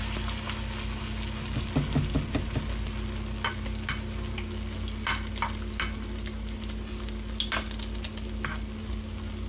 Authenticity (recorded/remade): recorded